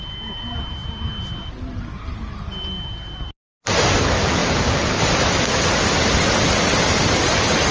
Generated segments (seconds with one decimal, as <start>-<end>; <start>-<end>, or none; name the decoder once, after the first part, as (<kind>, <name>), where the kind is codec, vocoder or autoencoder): none